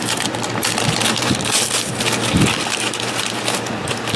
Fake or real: real